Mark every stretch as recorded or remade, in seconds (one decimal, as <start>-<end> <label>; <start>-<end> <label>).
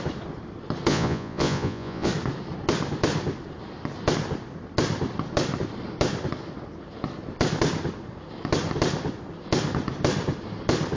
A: 0.0-0.9 recorded; 0.9-2.1 remade; 2.1-11.0 recorded